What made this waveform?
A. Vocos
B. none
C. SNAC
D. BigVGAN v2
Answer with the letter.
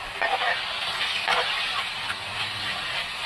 B